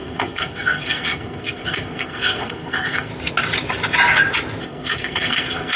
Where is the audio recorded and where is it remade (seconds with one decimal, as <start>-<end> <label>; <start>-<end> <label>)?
0.0-3.1 remade; 3.1-4.6 recorded; 4.6-5.8 remade